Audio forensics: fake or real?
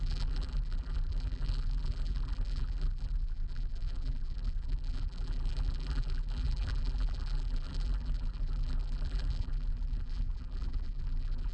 fake